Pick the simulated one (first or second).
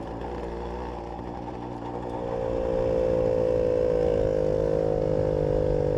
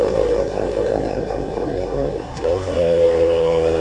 second